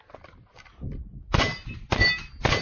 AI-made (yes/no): no